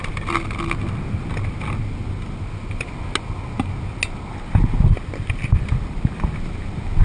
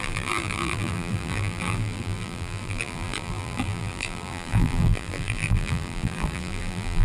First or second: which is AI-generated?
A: second